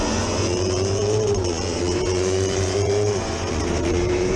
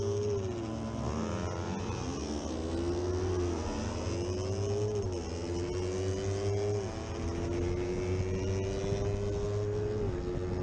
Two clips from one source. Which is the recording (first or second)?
second